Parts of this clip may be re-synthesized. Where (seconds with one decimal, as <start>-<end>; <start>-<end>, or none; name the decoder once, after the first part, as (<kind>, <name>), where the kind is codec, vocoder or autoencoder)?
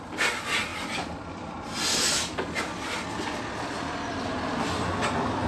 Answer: none